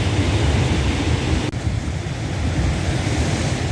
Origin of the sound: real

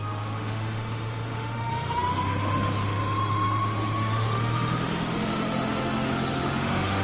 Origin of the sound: fake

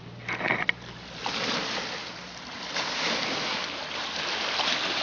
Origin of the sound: real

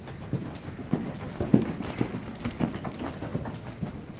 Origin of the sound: real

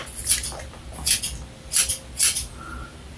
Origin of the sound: fake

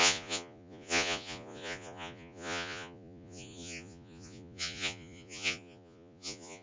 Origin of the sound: fake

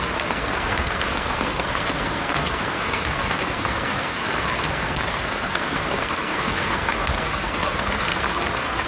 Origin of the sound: fake